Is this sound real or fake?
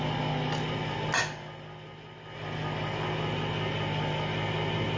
real